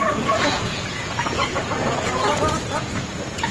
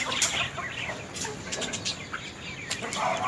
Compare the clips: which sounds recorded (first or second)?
second